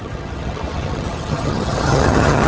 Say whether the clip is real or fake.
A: fake